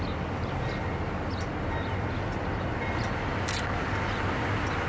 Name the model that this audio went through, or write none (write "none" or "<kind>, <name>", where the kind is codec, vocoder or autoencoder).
none